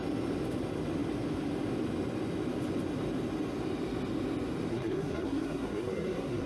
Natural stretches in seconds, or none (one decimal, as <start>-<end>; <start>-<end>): 0.0-4.7